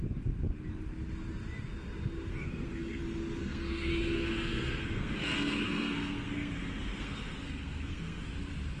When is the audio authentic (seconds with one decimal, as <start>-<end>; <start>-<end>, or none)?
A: 0.0-2.3; 3.0-3.4; 8.2-8.8